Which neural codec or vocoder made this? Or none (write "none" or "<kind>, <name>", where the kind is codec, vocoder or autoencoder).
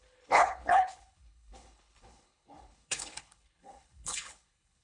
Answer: codec, HILCodec